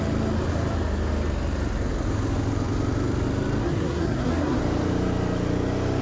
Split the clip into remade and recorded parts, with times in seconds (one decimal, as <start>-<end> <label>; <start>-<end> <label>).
0.0-3.6 recorded; 3.6-4.6 remade; 4.6-6.0 recorded